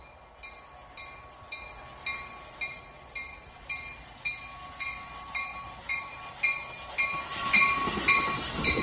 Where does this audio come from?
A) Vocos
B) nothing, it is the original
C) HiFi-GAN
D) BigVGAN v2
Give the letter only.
B